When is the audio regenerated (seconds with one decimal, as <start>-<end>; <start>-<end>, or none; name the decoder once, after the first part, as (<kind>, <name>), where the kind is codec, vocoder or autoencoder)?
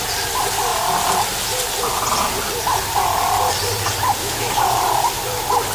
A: 4.2-4.8 (autoencoder, DAC-VAE)